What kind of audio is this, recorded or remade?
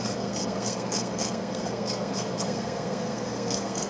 remade